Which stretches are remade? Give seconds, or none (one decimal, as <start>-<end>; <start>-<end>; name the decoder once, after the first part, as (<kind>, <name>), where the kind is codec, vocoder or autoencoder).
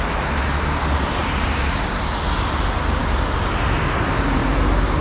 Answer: 1.2-2.1 (vocoder, BigVGAN v2)